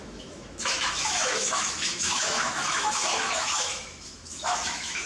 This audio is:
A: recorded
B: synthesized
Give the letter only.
B